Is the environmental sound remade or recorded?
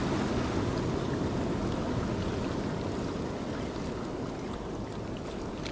recorded